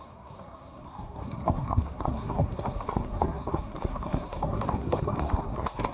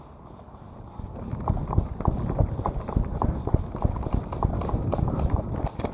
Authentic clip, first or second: second